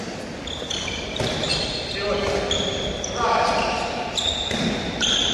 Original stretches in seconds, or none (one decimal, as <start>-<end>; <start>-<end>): 0.0-5.3